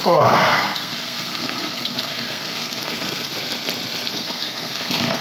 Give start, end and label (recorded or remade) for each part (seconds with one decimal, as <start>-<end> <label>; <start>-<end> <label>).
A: 0.0-3.3 remade; 3.3-4.1 recorded; 4.1-5.2 remade